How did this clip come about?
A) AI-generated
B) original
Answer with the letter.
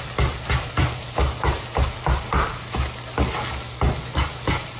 B